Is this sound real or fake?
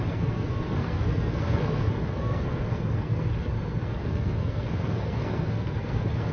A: fake